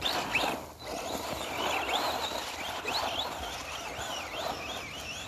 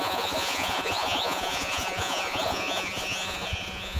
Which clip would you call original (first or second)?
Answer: first